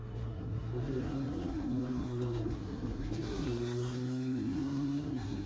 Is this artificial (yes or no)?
yes